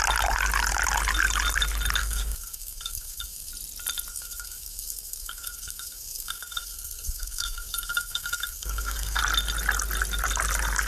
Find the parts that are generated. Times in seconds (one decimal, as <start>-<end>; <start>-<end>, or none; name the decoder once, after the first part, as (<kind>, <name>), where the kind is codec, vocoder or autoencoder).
2.0-3.5 (codec, SNAC); 4.1-9.2